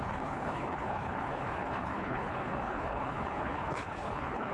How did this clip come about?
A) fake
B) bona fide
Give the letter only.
A